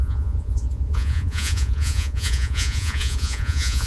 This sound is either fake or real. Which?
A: fake